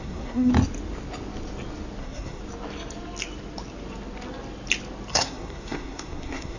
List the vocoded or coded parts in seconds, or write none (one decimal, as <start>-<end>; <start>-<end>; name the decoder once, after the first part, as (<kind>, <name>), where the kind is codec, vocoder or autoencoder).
0.0-0.5 (codec, SNAC); 2.0-2.4; 5.1-6.6